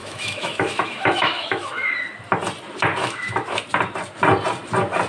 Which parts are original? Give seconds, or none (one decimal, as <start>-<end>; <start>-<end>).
1.9-3.0; 3.6-5.1